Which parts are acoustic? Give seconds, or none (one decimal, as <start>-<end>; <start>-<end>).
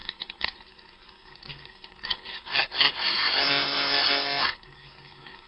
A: none